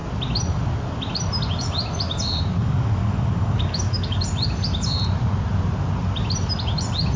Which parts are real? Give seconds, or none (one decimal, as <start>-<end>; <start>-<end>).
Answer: 0.0-2.6; 4.2-7.2

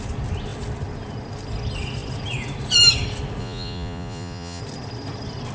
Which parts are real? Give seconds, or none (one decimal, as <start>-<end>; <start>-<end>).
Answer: 0.0-3.4; 4.6-5.5

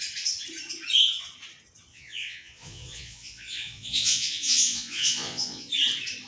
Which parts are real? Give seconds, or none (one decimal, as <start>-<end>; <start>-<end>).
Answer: 0.0-1.9; 5.7-6.3

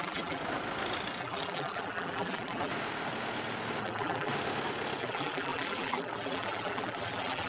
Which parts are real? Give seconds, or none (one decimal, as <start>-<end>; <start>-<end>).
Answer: 0.4-1.2; 2.7-3.8; 4.3-5.0

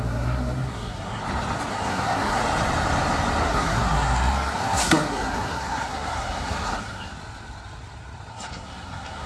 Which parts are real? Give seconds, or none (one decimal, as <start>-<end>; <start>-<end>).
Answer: 1.2-1.7; 2.4-3.4; 7.1-8.3

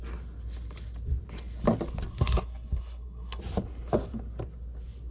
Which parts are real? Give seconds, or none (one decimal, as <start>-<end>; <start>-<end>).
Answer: 0.0-2.1; 3.4-5.1

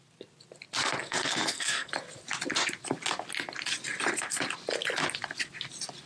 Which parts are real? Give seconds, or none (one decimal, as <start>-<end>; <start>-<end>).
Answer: 0.0-1.0; 1.9-6.1

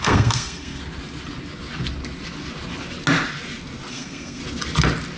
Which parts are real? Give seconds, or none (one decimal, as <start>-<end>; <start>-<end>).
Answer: 0.8-3.9; 4.4-5.2